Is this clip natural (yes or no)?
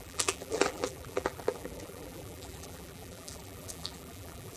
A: no